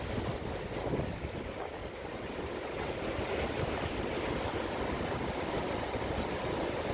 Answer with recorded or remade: recorded